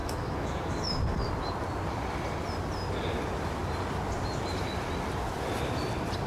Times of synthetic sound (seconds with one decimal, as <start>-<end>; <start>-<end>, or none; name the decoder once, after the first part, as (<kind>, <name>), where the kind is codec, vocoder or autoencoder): 0.0-1.0 (autoencoder, DAC-VAE)